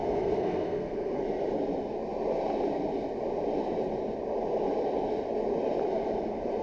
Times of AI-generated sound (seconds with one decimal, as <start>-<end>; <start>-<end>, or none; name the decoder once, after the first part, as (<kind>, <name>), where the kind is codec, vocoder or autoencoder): 0.0-1.2 (codec, SNAC)